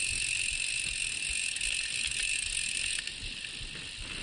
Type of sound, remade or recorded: recorded